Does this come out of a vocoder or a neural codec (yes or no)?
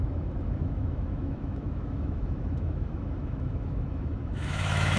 yes